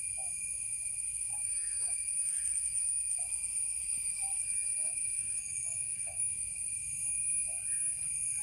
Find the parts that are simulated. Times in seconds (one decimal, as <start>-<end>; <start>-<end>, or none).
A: 1.3-3.2; 4.4-6.2